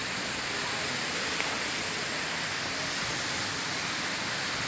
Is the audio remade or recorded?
recorded